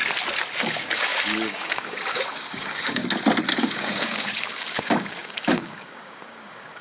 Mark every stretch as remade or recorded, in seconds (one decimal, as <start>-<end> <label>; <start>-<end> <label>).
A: 0.0-0.6 recorded; 0.6-3.0 remade; 3.0-3.6 recorded; 3.6-6.8 remade